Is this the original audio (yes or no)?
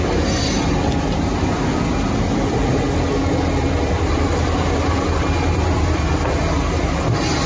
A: yes